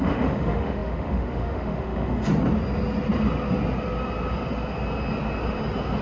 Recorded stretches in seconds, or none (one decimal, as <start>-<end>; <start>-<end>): 2.3-6.0